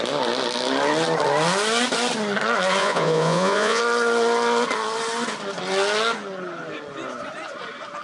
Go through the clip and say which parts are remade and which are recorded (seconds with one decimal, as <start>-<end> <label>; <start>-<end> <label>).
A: 0.0-2.8 recorded; 2.8-3.8 remade; 3.8-8.0 recorded